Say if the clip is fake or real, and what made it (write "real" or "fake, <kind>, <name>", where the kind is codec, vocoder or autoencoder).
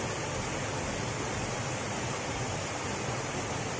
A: real